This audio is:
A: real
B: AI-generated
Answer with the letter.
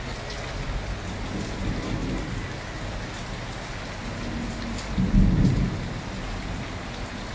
A